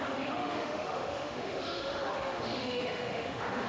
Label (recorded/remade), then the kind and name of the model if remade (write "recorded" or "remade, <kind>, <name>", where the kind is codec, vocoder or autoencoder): remade, autoencoder, DAC-VAE